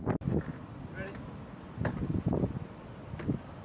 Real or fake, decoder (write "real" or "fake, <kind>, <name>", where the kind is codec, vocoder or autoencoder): real